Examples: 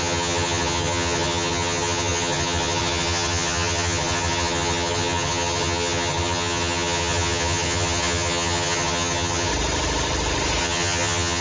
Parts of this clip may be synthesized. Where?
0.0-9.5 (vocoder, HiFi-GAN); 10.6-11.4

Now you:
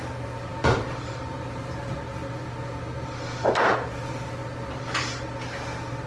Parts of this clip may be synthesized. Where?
0.0-2.2 (vocoder, BigVGAN v2)

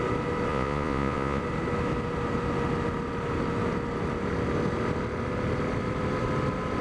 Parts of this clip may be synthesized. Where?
0.5-1.4 (vocoder, Vocos)

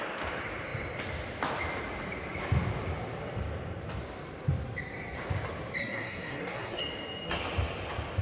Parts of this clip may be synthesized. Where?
5.8-6.8 (codec, SNAC)

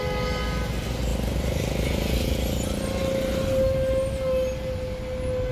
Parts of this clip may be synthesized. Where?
none

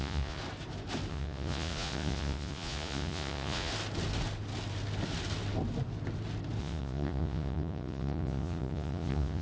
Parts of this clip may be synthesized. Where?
0.0-0.4 (vocoder, Vocos); 1.1-3.7; 6.6-9.4